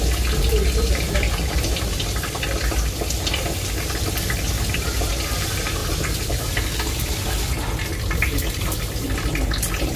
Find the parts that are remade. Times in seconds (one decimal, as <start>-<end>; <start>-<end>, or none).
none